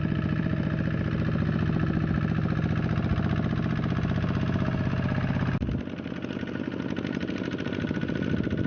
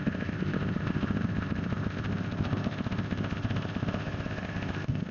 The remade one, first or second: second